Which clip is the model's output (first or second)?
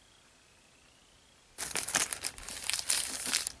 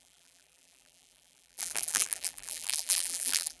second